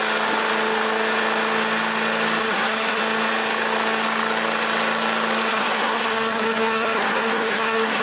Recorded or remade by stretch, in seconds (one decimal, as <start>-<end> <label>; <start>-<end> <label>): 0.0-2.4 recorded; 2.4-3.0 remade; 3.0-5.5 recorded; 5.5-8.0 remade